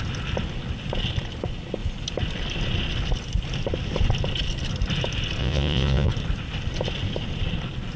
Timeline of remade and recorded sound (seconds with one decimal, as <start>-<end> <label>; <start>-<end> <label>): 0.0-5.4 recorded; 5.4-6.1 remade; 6.1-8.0 recorded